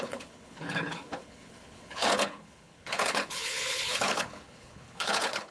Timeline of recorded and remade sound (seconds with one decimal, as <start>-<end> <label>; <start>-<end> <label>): 0.0-5.5 remade